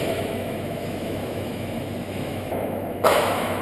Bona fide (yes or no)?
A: no